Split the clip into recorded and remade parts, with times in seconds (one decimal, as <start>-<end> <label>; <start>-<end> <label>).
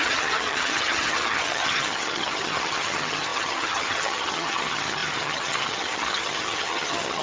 0.0-7.2 remade